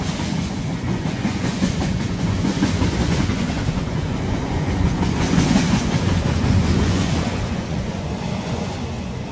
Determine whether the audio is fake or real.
fake